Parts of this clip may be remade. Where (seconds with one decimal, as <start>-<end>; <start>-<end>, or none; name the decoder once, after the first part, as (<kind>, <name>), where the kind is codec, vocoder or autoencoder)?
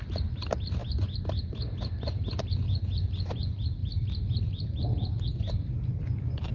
none